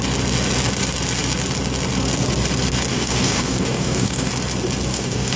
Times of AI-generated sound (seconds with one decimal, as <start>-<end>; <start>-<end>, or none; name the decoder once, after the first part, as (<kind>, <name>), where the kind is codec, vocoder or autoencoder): 2.9-4.3 (codec, DAC); 4.9-5.4